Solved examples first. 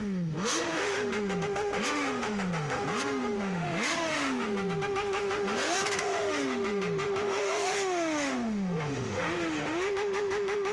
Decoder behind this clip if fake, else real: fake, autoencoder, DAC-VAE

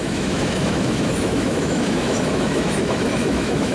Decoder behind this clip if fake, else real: fake, autoencoder, DAC-VAE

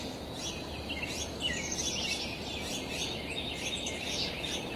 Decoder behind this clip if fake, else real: real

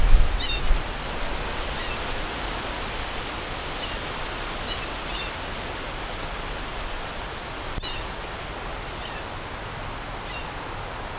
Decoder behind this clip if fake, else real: real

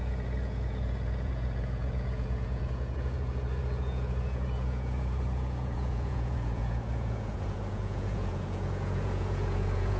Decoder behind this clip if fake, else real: fake, vocoder, Vocos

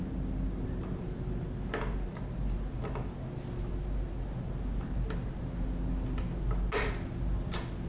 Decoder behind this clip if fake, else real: real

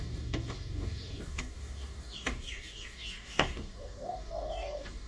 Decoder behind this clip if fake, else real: fake, codec, DAC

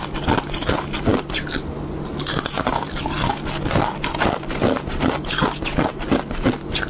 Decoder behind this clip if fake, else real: real